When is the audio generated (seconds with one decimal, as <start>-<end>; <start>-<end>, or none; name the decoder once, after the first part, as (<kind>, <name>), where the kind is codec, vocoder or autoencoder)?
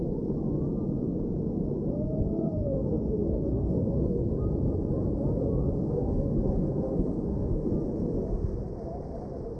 1.9-4.0 (autoencoder, DAC-VAE); 5.4-7.7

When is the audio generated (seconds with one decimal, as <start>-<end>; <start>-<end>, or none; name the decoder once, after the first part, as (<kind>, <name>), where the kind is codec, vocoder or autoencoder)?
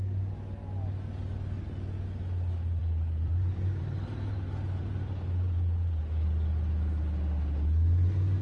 2.8-6.0 (vocoder, BigVGAN v2)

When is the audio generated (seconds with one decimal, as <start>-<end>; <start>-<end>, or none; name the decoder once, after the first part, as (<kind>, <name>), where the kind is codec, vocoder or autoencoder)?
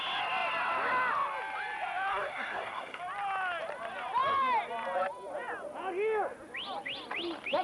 2.1-3.0 (codec, SNAC)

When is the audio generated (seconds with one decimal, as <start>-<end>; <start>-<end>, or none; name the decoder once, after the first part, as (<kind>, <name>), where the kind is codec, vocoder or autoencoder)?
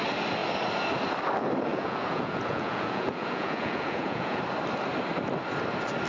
1.7-4.4 (vocoder, Vocos)